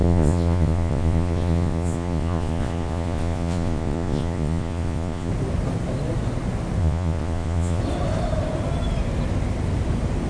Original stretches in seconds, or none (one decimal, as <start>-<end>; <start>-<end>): 5.3-6.8; 7.8-10.3

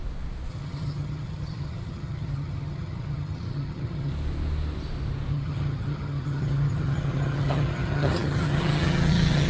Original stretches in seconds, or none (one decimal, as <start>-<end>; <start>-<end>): 0.0-0.5; 4.1-5.3

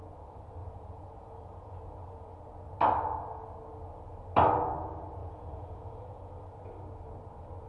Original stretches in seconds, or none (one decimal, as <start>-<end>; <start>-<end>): 0.0-0.6; 2.4-5.2; 6.3-7.7

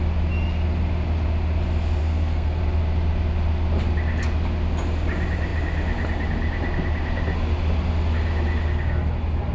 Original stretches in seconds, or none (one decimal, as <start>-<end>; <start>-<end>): 0.0-2.0; 2.6-9.5

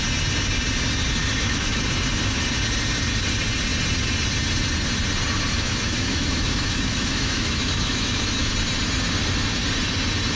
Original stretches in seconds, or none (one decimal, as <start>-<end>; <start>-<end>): 0.0-1.2; 1.8-5.5; 8.5-10.4

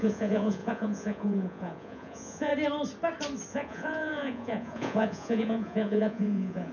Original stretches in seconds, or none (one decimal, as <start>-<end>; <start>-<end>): 2.5-3.5

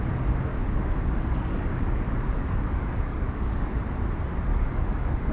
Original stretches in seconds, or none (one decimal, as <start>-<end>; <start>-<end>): 0.0-0.5; 3.7-4.5

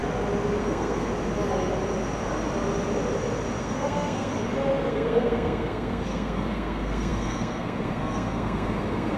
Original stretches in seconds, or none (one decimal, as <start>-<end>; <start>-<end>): 0.0-0.6; 1.1-3.6; 4.3-4.9